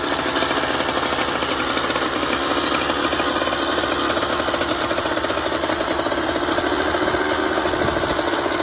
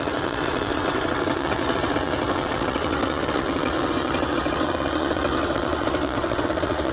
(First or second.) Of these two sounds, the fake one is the second